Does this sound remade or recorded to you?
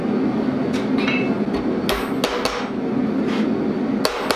recorded